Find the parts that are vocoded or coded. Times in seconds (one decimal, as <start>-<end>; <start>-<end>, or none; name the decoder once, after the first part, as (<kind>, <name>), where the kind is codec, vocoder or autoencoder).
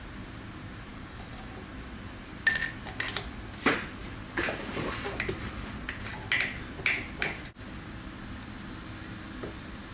0.9-1.4 (codec, DAC)